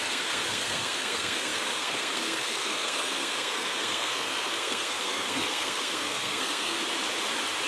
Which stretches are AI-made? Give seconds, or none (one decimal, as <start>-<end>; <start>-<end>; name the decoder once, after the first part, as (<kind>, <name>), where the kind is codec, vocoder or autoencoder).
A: 0.0-6.8 (codec, SNAC)